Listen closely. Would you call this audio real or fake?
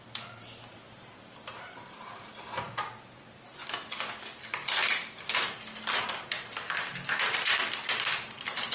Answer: real